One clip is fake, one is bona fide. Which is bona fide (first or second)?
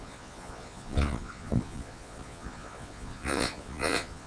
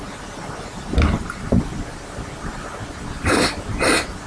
second